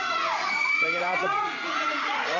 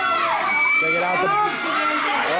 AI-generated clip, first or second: first